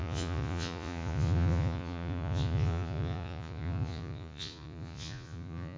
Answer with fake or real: fake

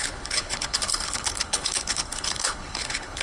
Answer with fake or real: fake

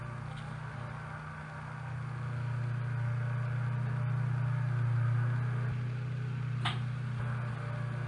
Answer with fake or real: real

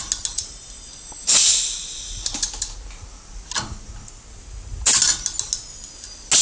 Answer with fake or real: real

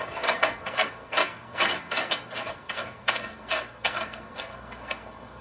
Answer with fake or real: fake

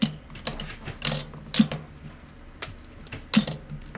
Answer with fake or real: real